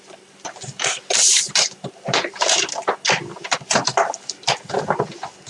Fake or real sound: real